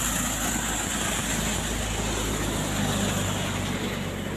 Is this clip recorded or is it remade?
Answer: recorded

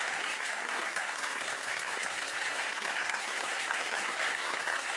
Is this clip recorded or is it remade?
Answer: remade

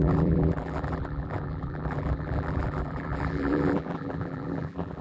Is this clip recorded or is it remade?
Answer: remade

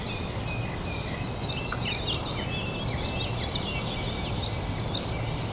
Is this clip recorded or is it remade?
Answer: recorded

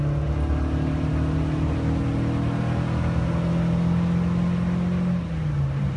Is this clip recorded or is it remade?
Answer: recorded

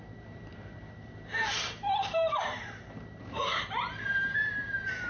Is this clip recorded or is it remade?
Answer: remade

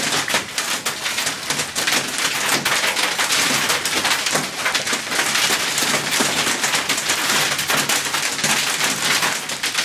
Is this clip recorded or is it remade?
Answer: recorded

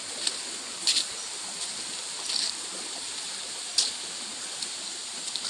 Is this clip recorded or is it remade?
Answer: recorded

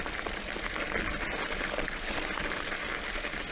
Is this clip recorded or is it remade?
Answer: recorded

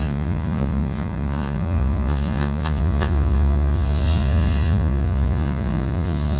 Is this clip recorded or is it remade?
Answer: remade